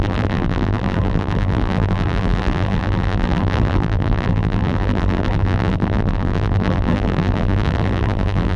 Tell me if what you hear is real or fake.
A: fake